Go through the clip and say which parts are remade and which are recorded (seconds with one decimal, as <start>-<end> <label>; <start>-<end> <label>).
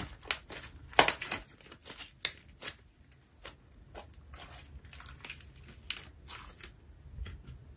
0.0-7.8 recorded